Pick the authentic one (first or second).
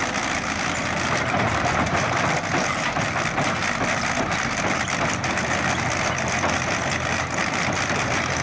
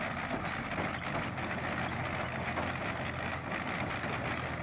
second